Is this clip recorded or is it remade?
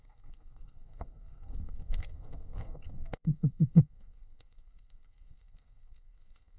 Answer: remade